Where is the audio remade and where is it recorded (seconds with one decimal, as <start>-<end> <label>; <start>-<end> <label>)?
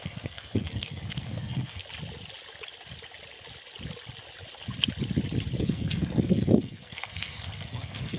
0.0-1.8 remade; 1.8-5.6 recorded; 5.6-8.2 remade